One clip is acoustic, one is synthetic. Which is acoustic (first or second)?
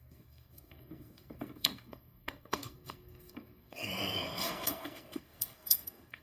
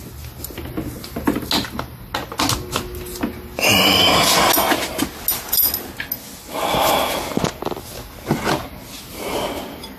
second